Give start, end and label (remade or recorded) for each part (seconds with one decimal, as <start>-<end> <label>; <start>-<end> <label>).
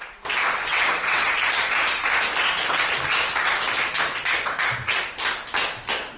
0.0-0.6 recorded; 0.6-1.3 remade; 1.3-6.2 recorded